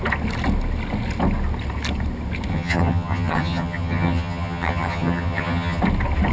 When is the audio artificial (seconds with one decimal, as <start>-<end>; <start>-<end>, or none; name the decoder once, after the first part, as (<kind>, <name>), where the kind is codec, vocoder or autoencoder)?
2.5-5.8 (vocoder, HiFi-GAN)